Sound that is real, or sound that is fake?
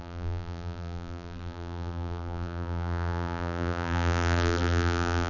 fake